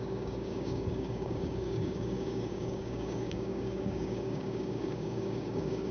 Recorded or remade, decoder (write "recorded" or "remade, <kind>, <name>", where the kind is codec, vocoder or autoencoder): remade, codec, DAC